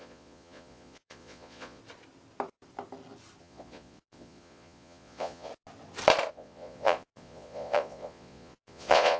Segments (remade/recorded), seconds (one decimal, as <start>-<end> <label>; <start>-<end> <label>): 0.0-1.8 remade; 1.8-3.4 recorded; 3.4-5.5 remade; 5.5-6.3 recorded; 6.3-9.2 remade